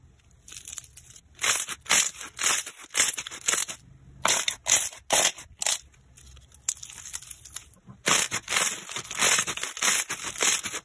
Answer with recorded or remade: recorded